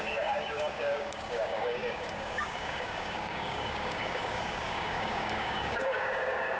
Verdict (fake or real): fake